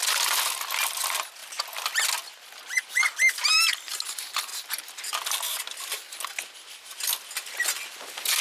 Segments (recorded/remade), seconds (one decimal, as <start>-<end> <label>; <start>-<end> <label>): 0.0-8.4 recorded